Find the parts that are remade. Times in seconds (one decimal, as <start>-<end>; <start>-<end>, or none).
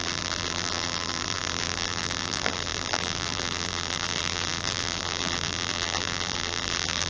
0.0-7.1